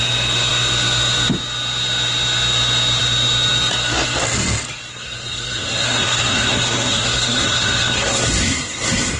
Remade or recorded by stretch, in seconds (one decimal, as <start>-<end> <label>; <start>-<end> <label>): 0.0-4.9 recorded; 4.9-9.2 remade